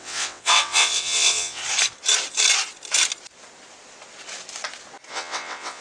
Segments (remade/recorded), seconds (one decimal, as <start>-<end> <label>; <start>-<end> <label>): 0.0-1.6 remade; 1.6-5.1 recorded; 5.1-5.8 remade